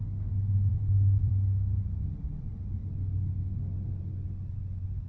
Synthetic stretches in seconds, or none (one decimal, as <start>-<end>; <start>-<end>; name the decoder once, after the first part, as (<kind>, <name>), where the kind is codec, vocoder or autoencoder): 0.7-1.3 (vocoder, BigVGAN v2)